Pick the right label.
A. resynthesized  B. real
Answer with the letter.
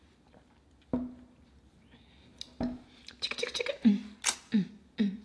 B